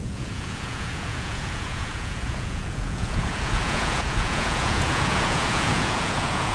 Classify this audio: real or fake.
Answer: fake